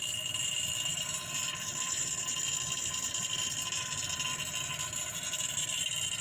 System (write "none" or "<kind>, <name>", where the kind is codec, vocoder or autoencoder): vocoder, BigVGAN v2